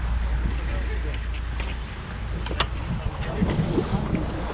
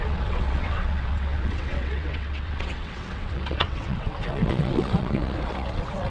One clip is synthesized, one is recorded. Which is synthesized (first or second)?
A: second